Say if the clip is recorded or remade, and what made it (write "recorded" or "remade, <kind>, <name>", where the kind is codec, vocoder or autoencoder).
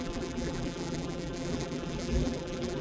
remade, vocoder, BigVGAN v2